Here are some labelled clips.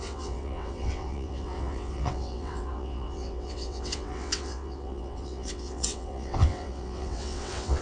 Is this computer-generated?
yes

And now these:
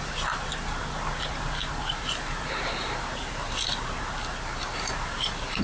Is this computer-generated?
no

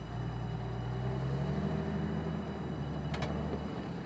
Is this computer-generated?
no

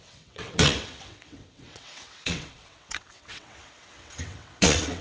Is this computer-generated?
yes